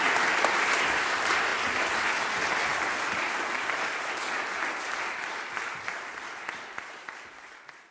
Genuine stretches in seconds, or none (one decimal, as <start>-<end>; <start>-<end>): 0.0-7.9